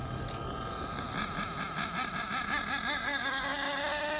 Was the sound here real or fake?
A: real